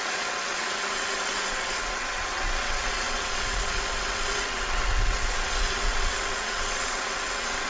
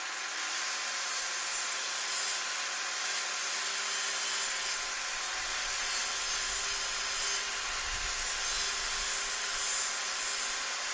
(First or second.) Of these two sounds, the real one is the second